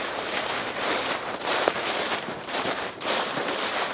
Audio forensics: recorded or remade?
remade